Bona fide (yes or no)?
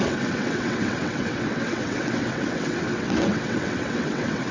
no